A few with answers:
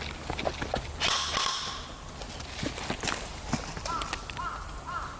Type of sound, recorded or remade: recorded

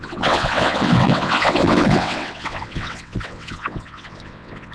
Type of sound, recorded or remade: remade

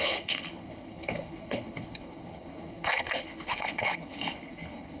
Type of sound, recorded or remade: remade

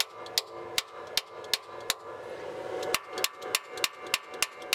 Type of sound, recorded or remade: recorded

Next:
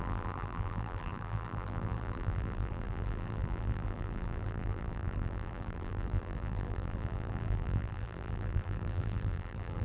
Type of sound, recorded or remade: remade